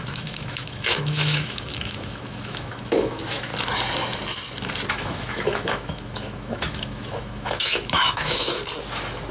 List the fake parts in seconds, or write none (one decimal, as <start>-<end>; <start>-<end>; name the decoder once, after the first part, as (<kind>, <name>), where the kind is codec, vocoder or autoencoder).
0.0-3.5 (autoencoder, DAC-VAE); 4.9-8.6

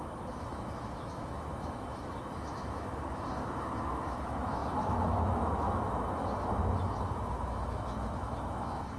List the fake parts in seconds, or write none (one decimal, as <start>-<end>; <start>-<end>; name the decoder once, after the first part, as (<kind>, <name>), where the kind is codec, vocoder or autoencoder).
0.0-9.0 (autoencoder, DAC-VAE)

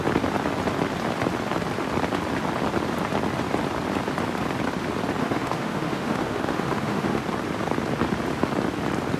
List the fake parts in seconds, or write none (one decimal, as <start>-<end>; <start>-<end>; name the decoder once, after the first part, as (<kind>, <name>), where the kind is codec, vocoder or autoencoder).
5.2-7.2 (autoencoder, DAC-VAE)

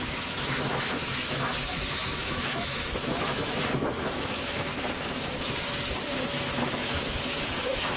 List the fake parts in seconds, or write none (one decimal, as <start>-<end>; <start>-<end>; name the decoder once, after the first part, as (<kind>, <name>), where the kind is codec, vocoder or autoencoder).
0.0-4.7 (autoencoder, DAC-VAE); 6.6-8.0

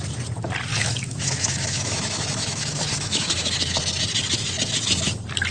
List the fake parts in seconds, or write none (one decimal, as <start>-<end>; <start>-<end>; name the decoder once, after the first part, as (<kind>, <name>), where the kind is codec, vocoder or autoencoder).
0.7-3.8 (autoencoder, DAC-VAE)

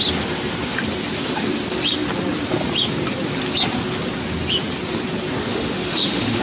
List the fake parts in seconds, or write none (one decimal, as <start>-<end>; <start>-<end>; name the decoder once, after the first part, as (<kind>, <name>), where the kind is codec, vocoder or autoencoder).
5.5-6.4 (autoencoder, DAC-VAE)